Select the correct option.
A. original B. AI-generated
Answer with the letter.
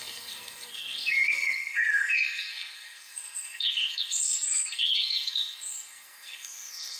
B